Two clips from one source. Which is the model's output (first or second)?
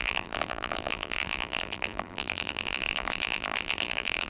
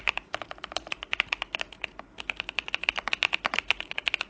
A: first